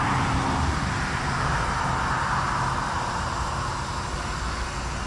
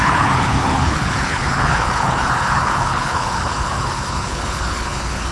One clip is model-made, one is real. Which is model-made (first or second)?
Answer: second